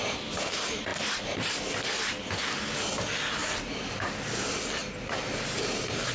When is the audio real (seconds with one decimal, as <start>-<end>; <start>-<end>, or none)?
0.0-3.4; 4.1-4.8